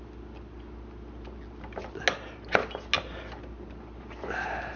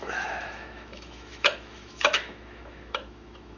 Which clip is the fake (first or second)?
second